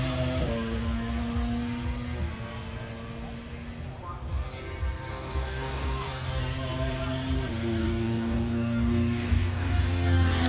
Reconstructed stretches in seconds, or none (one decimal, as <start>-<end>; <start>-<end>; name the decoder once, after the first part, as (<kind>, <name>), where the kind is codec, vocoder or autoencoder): 5.1-6.4 (codec, DAC); 7.8-10.5